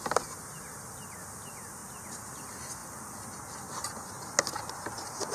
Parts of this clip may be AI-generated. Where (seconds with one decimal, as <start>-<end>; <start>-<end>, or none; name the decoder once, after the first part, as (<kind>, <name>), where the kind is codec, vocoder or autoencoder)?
none